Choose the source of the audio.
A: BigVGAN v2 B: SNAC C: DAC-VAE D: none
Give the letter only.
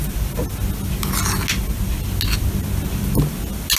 D